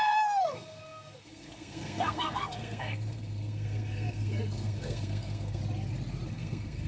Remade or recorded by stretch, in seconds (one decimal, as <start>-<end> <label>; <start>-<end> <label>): 0.0-5.6 remade; 5.6-6.3 recorded; 6.3-6.9 remade